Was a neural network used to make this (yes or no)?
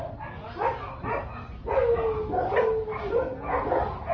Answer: no